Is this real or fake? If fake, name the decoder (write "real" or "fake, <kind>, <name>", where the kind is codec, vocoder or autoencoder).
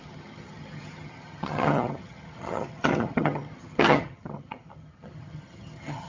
fake, vocoder, HiFi-GAN